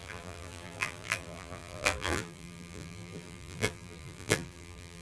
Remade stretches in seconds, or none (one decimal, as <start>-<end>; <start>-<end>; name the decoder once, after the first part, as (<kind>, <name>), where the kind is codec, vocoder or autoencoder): 0.0-5.0 (vocoder, BigVGAN v2)